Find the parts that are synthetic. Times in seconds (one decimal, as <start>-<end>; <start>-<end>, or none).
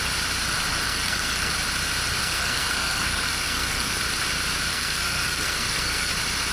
0.7-1.5; 2.2-4.0; 4.7-6.1